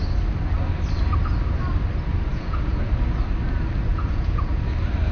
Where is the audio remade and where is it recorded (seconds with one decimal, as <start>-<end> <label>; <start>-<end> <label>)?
0.0-2.3 recorded; 2.3-2.9 remade; 2.9-3.9 recorded; 3.9-4.6 remade; 4.6-5.1 recorded